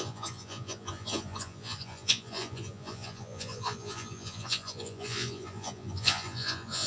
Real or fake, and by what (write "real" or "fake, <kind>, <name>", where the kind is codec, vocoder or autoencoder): fake, vocoder, Vocos